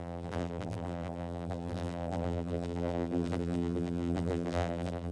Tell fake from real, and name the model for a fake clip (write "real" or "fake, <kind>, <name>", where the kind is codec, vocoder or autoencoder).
fake, vocoder, BigVGAN v2